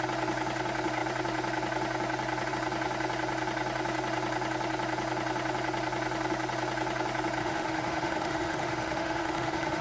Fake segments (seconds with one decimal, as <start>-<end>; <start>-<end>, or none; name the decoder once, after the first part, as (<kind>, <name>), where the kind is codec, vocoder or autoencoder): 7.4-9.8 (autoencoder, DAC-VAE)